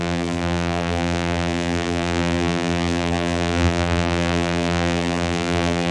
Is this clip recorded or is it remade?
remade